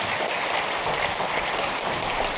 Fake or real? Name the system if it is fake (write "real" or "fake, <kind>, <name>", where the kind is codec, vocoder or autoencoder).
real